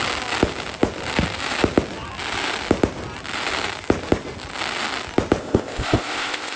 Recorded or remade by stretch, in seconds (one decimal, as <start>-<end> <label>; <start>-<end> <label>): 0.0-5.4 recorded; 5.4-6.6 remade